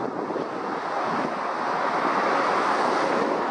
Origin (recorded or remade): recorded